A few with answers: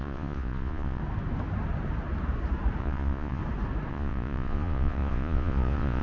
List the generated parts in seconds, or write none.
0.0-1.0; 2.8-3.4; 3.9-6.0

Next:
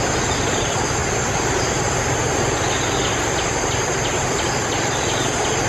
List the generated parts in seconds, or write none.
none

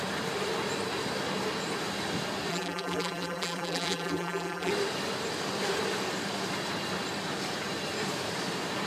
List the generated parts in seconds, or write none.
2.5-4.7

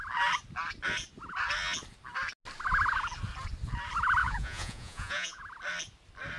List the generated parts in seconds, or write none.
4.2-5.4

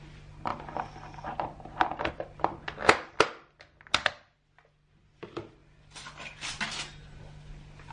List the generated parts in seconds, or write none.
none

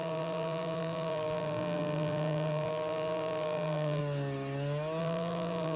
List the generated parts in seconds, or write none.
0.0-4.0; 5.0-5.8